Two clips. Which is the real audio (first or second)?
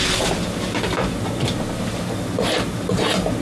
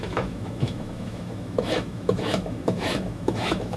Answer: first